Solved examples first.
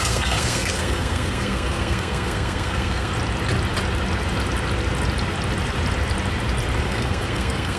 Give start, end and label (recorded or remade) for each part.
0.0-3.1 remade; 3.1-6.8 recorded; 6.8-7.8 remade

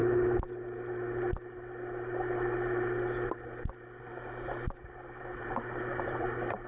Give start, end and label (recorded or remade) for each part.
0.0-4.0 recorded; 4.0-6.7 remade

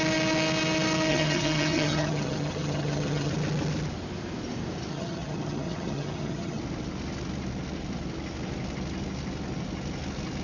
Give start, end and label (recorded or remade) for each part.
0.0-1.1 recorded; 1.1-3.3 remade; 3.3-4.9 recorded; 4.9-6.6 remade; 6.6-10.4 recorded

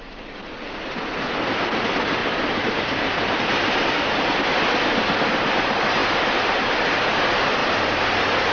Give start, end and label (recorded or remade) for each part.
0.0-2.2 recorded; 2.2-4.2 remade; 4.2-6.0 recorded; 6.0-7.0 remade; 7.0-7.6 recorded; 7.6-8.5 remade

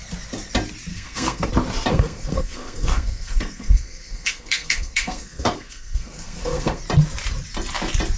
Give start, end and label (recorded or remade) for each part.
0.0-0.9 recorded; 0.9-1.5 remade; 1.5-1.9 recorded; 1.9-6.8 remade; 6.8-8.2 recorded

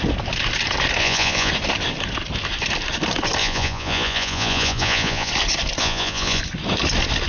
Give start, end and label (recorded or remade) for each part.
0.0-1.0 recorded; 1.0-1.5 remade; 1.5-3.4 recorded; 3.4-5.3 remade; 5.3-5.8 recorded; 5.8-6.4 remade; 6.4-7.3 recorded

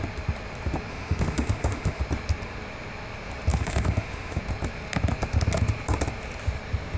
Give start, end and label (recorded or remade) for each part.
0.0-0.9 recorded; 0.9-2.0 remade; 2.0-3.5 recorded; 3.5-4.4 remade; 4.4-7.0 recorded